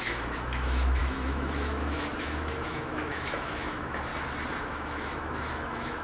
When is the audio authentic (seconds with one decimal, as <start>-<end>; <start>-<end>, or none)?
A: 4.1-4.6

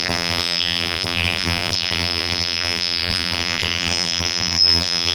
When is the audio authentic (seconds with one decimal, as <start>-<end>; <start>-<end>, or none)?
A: none

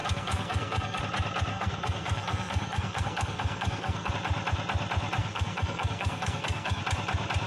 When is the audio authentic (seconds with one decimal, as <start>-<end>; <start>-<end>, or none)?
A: 1.0-1.5; 4.1-5.2; 6.8-7.5

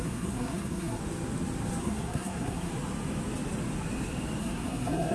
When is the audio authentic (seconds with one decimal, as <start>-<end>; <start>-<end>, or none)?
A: 1.0-1.8; 2.7-4.4